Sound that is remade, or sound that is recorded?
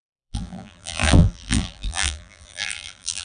remade